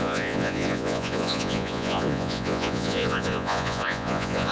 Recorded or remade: remade